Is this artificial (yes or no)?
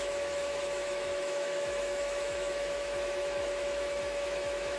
yes